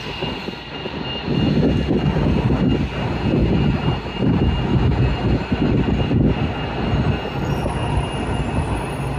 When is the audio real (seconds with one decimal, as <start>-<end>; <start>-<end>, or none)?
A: 0.0-9.2